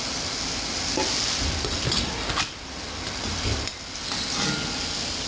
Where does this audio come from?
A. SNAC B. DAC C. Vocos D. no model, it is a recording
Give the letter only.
D